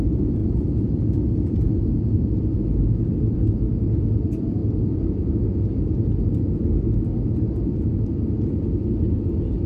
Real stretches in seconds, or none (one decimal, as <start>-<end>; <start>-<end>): 0.0-9.7